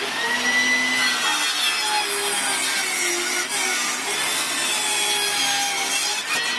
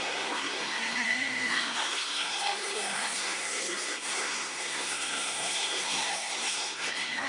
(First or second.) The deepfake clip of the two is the second